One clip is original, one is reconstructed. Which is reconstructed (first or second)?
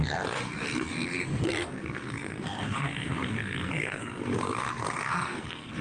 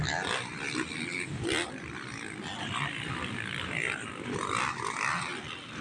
first